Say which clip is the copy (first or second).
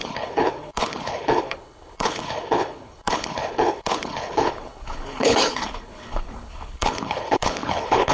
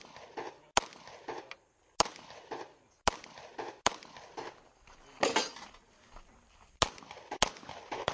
first